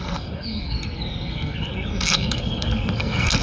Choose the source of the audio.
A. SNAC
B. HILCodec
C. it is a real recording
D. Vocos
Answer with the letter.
A